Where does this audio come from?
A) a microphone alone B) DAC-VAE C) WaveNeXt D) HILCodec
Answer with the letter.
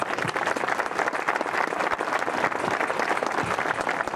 A